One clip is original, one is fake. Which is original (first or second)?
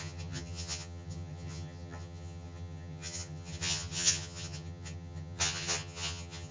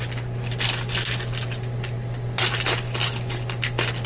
second